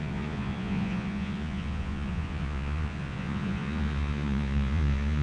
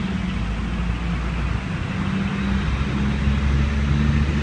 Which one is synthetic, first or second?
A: first